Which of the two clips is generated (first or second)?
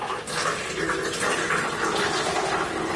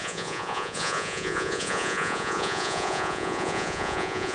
second